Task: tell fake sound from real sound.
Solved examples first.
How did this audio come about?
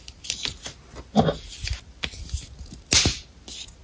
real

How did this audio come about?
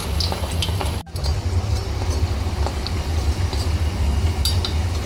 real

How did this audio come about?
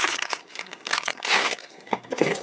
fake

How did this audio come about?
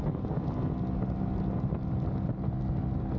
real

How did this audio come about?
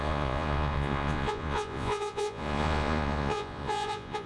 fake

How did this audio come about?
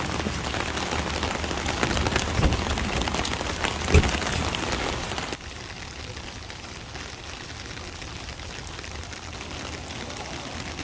real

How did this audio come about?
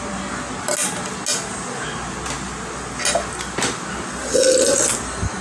real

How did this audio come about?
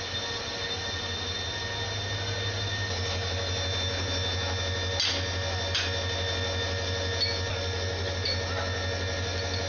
real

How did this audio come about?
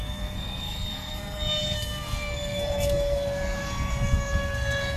fake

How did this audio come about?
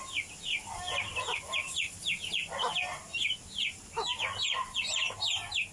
real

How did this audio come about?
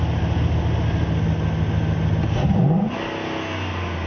real